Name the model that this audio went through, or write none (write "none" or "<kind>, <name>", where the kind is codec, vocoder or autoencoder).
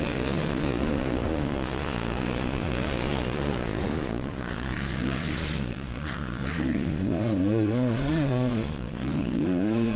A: vocoder, Vocos